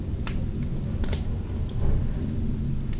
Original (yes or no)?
yes